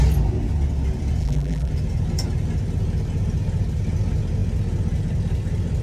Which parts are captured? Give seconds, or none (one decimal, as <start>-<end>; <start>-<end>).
0.0-1.2; 1.7-5.8